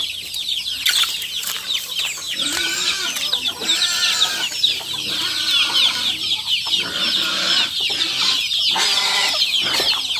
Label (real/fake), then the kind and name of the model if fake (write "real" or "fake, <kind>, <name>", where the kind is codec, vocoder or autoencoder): real